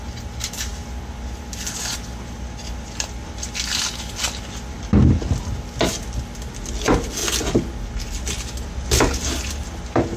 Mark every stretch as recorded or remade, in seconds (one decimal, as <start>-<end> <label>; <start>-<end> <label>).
0.0-10.2 recorded